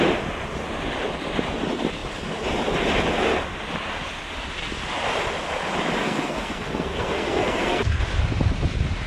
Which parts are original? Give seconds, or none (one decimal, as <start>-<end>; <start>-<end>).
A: 0.0-6.0; 8.0-9.1